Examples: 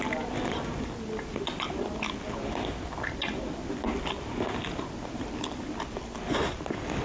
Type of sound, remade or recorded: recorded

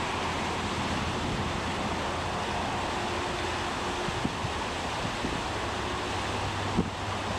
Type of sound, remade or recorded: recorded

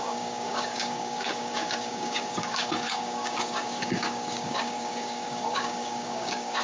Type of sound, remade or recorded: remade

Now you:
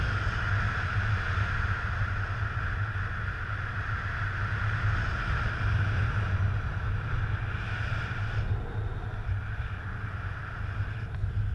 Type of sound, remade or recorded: recorded